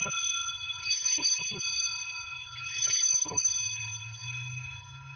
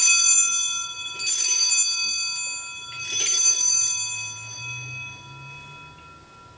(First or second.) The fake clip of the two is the first